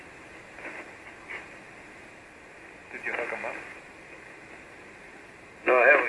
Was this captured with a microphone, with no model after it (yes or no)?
yes